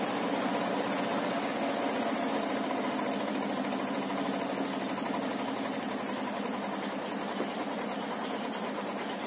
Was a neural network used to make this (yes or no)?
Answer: no